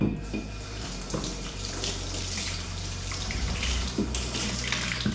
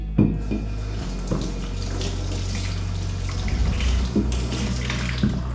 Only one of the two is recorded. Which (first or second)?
second